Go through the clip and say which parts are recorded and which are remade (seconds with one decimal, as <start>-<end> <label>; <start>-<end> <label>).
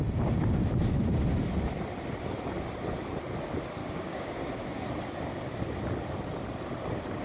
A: 0.0-3.8 recorded; 3.8-4.9 remade; 4.9-7.2 recorded